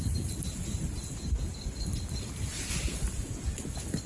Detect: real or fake real